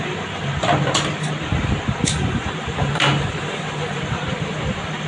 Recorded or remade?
recorded